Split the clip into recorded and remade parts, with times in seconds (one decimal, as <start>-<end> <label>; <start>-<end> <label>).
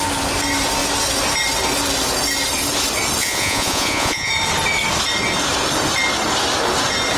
0.0-3.2 recorded; 3.2-4.3 remade; 4.3-7.2 recorded